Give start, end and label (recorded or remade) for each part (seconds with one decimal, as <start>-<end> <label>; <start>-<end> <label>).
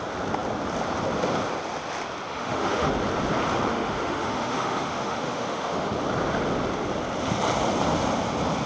0.0-2.3 recorded; 2.3-2.9 remade; 2.9-3.7 recorded; 3.7-5.9 remade; 5.9-8.7 recorded